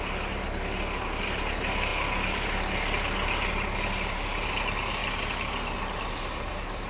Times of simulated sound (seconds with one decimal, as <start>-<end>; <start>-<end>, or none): none